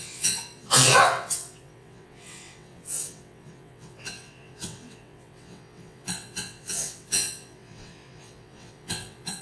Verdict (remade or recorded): remade